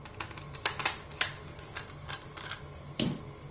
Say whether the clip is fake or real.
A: real